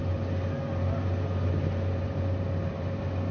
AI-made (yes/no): no